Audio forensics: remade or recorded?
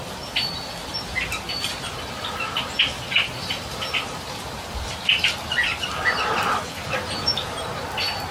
remade